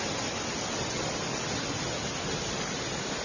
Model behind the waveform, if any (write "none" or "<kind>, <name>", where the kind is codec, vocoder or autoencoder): none